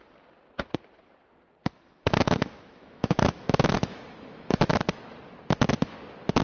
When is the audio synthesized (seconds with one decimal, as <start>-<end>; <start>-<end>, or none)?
1.6-4.7